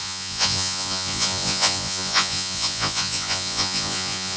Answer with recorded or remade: remade